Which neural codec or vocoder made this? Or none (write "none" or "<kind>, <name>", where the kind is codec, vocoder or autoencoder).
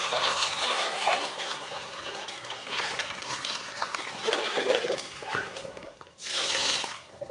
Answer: codec, SNAC